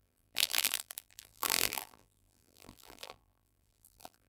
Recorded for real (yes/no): no